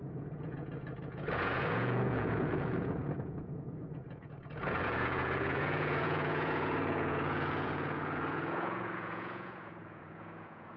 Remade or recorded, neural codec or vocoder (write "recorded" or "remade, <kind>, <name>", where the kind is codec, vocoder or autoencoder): remade, vocoder, Vocos